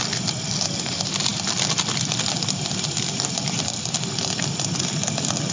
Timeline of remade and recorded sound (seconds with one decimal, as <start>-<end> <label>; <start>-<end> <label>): 0.0-5.5 recorded

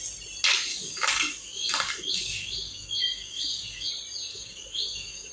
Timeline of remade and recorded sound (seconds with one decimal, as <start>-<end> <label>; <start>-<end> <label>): 0.0-0.7 recorded; 0.7-3.9 remade; 3.9-4.3 recorded; 4.3-5.3 remade

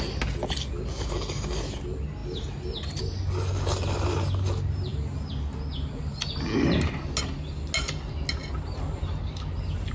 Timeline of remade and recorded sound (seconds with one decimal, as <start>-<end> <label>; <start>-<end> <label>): 0.0-9.9 recorded

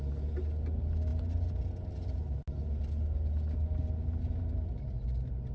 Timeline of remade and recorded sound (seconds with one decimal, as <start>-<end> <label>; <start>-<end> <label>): 0.0-5.5 recorded

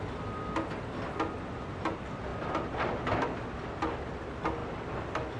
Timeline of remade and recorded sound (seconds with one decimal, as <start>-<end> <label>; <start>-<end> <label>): 0.0-5.4 recorded